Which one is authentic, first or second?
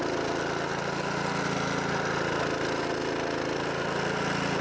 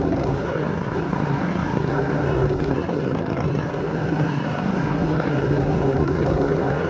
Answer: first